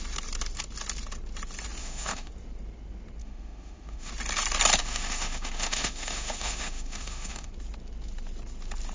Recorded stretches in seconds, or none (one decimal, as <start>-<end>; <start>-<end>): 0.0-1.8; 2.3-3.2; 4.1-4.8; 7.5-8.9